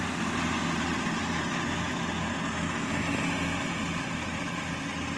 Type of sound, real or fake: real